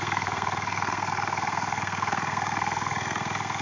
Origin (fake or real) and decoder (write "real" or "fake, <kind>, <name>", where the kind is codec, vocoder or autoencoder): fake, codec, SNAC